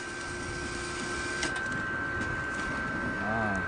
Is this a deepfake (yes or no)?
no